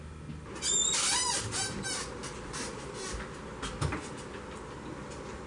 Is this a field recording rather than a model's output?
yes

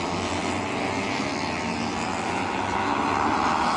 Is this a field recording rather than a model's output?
yes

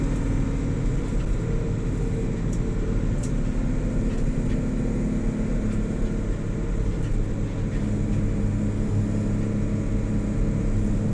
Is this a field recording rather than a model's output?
yes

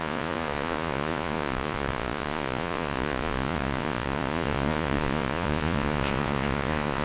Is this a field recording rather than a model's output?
no